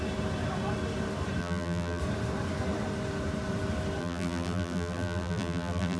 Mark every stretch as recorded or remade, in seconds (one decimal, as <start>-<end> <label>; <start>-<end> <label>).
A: 0.0-1.4 recorded; 1.4-2.0 remade; 2.0-4.0 recorded; 4.0-6.0 remade